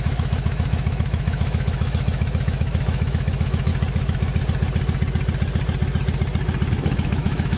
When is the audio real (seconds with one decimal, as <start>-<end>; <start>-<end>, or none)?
3.7-6.7